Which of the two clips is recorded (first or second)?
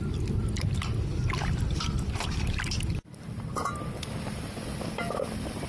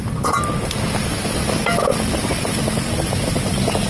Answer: second